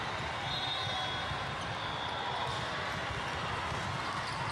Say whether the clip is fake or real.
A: real